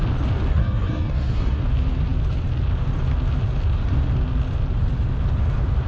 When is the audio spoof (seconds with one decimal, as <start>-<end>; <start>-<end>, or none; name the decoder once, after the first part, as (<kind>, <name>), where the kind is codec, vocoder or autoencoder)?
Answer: 0.5-1.6 (codec, SNAC)